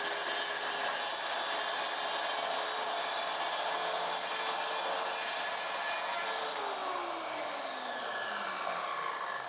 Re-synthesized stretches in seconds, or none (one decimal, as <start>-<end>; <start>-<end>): none